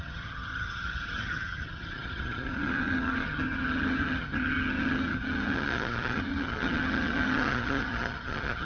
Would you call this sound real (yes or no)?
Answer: no